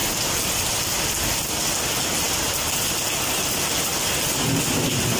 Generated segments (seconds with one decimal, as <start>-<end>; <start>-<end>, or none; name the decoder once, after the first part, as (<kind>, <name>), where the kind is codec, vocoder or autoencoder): none

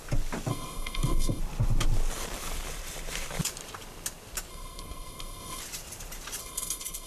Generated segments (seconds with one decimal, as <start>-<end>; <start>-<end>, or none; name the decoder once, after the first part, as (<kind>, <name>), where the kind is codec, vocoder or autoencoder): 0.5-1.4 (codec, SNAC); 4.5-5.6; 6.4-7.1

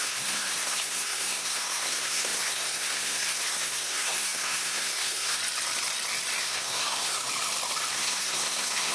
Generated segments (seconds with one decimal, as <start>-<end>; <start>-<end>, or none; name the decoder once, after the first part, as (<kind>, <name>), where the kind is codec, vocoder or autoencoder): 0.0-5.4 (codec, SNAC); 6.4-7.2; 7.9-8.9

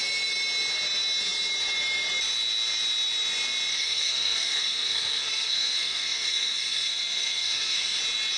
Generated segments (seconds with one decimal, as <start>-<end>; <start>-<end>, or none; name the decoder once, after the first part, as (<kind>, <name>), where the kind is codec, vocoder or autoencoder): 3.7-8.0 (codec, SNAC)

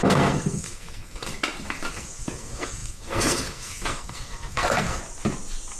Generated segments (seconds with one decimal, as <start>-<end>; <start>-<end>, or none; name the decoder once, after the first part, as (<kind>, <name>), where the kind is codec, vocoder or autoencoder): 0.0-1.3 (codec, SNAC); 1.9-5.0

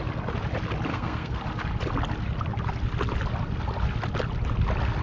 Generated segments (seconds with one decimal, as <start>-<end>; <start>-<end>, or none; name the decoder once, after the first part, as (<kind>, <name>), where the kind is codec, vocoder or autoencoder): 0.9-1.4 (codec, SNAC)